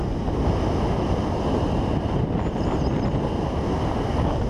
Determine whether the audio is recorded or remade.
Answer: recorded